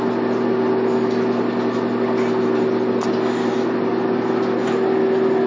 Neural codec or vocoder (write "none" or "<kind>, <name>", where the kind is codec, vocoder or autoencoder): none